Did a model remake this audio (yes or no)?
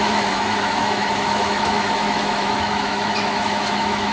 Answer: yes